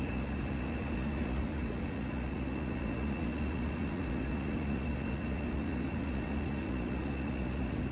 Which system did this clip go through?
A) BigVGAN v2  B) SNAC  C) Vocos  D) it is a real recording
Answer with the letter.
C